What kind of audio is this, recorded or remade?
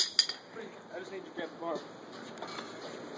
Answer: recorded